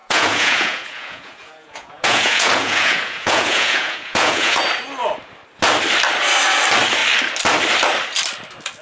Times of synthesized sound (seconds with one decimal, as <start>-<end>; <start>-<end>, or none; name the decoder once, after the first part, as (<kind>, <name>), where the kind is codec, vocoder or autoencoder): 0.0-4.6 (vocoder, Vocos)